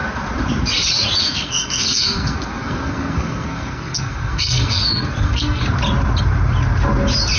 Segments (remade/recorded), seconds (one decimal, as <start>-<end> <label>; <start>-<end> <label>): 0.0-1.2 recorded; 1.2-5.6 remade; 5.6-7.4 recorded